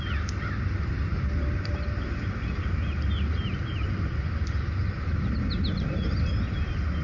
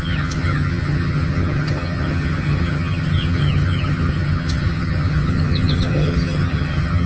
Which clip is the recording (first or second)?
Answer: first